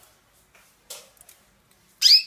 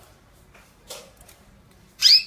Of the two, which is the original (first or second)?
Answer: first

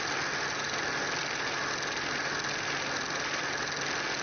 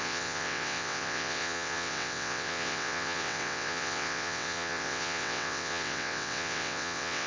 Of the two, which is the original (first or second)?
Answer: first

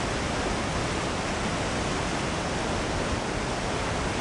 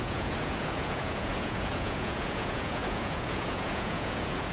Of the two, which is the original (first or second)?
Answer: first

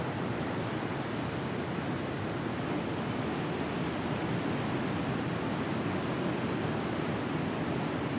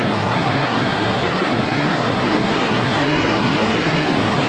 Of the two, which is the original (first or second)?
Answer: first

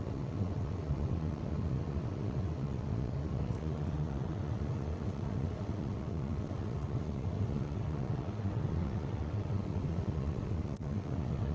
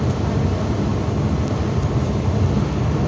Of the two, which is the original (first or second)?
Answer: second